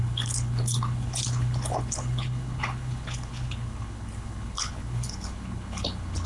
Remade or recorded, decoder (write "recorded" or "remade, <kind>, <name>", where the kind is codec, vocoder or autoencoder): remade, codec, HILCodec